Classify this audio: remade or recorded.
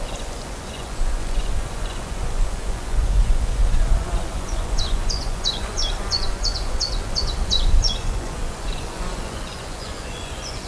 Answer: remade